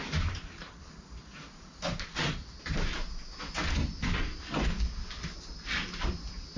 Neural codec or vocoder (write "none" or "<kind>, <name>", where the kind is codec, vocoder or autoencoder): none